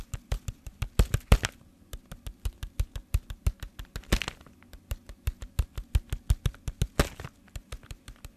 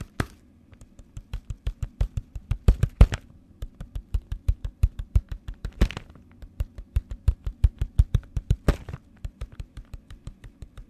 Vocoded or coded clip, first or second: second